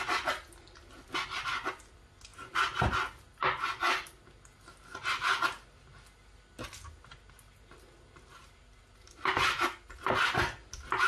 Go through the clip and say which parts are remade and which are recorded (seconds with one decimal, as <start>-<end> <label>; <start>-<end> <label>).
0.0-11.1 recorded